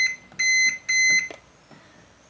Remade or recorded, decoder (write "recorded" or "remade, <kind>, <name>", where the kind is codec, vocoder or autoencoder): recorded